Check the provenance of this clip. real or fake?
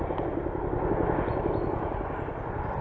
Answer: real